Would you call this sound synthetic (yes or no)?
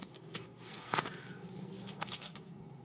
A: yes